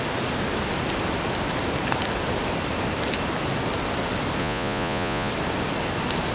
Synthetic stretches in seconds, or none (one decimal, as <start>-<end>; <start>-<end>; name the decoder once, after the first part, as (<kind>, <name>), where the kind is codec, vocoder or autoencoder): 4.4-5.3 (vocoder, Vocos)